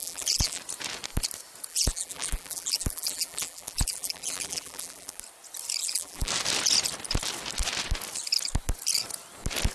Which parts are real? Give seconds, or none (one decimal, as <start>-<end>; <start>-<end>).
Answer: 0.6-1.7; 5.2-5.8; 6.3-9.7